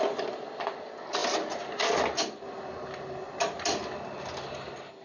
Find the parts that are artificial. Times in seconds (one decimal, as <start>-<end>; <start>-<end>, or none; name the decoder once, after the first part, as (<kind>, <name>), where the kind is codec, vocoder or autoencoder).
none